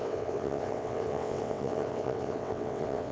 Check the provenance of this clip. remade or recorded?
remade